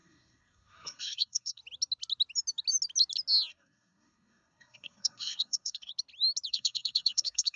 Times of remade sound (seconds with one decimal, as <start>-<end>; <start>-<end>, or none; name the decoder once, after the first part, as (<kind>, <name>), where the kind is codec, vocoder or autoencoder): 0.0-1.6 (codec, SNAC); 3.5-5.9; 6.5-7.6